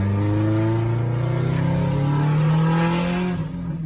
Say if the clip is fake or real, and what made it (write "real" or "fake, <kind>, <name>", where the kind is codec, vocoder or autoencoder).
real